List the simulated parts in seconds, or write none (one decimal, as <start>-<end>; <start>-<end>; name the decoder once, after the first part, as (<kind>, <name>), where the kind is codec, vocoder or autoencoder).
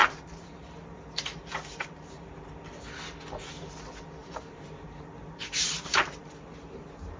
0.0-2.3 (vocoder, BigVGAN v2); 4.2-7.2